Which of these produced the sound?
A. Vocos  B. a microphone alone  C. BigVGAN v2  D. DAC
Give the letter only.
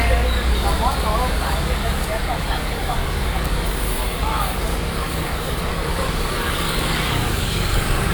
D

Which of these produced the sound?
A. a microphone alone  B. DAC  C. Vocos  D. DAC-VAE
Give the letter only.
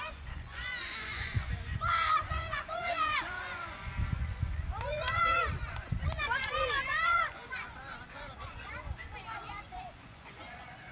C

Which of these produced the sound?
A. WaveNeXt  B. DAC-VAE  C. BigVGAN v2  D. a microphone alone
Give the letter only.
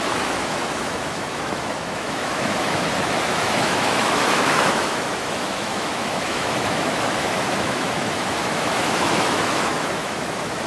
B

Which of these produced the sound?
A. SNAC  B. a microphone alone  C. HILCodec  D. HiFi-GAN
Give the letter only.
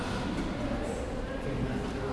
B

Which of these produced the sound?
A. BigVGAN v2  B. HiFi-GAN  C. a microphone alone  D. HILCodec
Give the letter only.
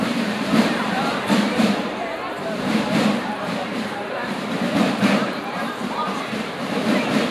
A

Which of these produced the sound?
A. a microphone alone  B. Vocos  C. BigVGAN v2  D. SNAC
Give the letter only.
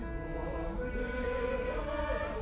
A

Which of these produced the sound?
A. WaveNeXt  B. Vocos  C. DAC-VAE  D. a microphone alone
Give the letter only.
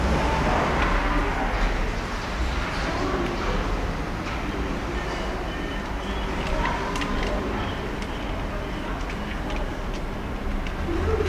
D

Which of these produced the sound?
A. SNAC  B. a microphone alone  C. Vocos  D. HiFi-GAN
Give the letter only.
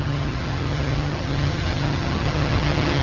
D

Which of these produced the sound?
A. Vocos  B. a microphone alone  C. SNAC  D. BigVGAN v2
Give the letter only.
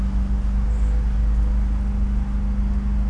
B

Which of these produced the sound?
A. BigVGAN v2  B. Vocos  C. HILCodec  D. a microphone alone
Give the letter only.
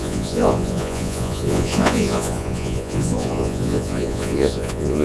B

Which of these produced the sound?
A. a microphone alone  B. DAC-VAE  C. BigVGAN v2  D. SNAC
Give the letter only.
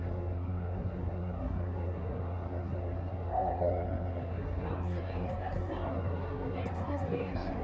D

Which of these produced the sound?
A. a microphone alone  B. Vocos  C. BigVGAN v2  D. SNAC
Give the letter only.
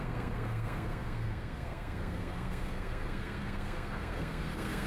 D